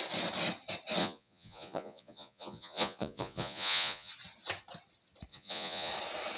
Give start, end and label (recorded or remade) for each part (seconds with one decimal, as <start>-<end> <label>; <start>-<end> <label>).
0.0-1.0 recorded; 1.0-4.1 remade; 4.1-5.3 recorded; 5.3-5.9 remade; 5.9-6.4 recorded